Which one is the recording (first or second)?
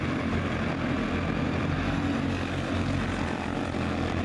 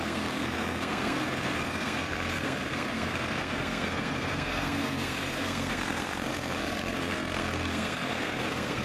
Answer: first